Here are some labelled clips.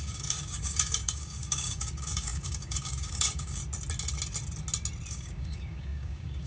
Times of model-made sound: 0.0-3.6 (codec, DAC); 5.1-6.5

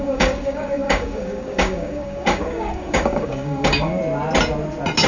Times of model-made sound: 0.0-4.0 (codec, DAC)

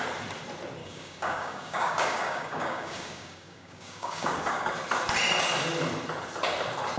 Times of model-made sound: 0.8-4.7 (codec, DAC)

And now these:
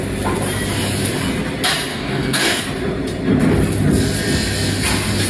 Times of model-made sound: 1.9-2.6 (codec, DAC)

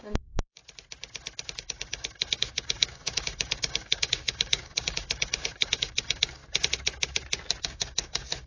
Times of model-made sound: 0.0-0.6 (codec, DAC); 1.6-6.4; 7.6-8.5